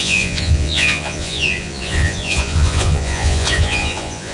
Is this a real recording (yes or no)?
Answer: no